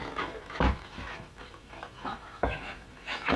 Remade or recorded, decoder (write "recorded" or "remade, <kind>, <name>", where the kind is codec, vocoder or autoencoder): remade, autoencoder, DAC-VAE